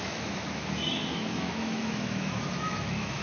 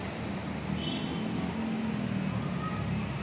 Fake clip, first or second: first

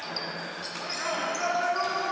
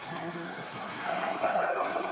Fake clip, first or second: second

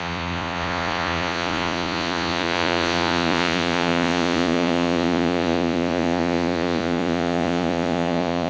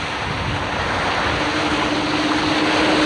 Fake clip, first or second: first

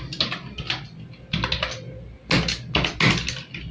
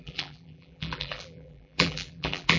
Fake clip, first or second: second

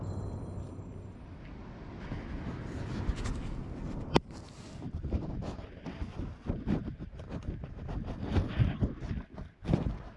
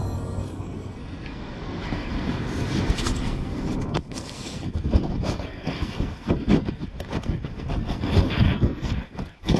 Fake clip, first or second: second